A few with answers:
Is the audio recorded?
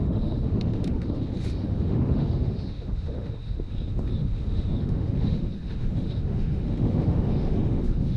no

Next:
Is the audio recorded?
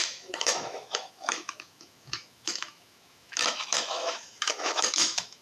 no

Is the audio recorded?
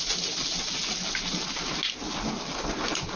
yes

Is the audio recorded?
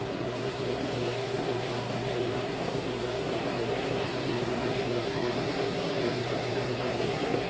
no